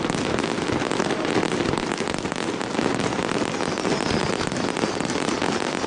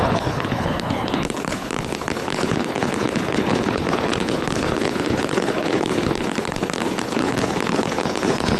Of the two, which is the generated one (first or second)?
second